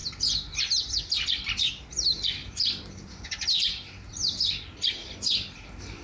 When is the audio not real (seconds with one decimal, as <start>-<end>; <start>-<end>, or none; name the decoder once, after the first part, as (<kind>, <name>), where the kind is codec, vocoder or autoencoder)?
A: none